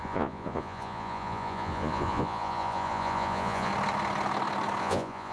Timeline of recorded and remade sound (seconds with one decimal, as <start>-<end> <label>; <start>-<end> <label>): 0.0-3.7 remade; 3.7-4.8 recorded; 4.8-5.3 remade